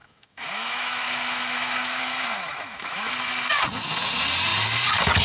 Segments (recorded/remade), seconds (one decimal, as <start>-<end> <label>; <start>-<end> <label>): 0.0-3.1 remade; 3.1-5.2 recorded